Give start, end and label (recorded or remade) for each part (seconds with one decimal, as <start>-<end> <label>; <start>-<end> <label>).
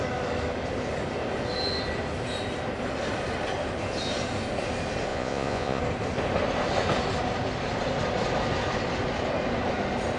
0.0-5.1 recorded; 5.1-5.8 remade; 5.8-10.2 recorded